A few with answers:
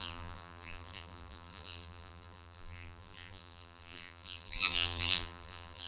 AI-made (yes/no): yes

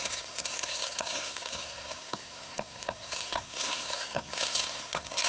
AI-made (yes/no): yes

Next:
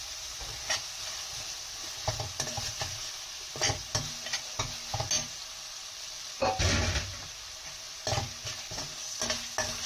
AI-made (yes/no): no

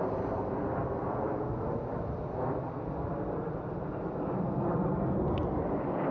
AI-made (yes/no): no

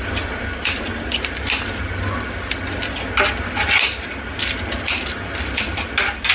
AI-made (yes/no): no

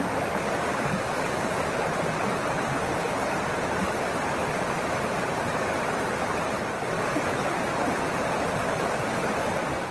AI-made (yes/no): yes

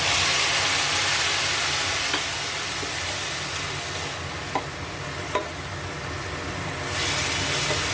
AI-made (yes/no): no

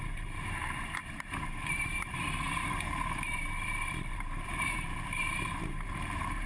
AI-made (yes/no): yes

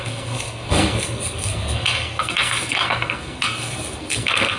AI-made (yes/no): yes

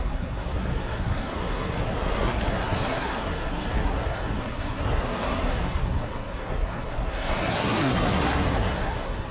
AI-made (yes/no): yes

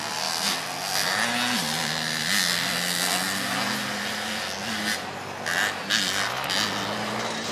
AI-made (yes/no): no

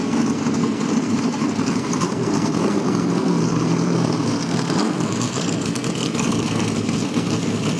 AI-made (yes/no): yes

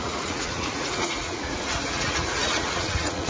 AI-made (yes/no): yes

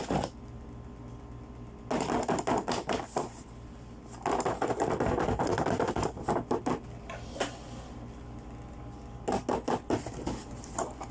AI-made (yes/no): no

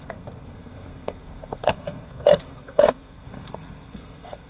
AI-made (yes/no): yes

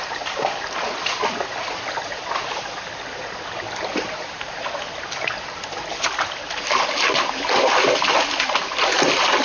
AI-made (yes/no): no